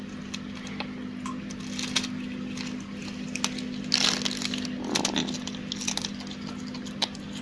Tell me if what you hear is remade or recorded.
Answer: recorded